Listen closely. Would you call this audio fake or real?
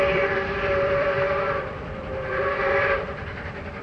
fake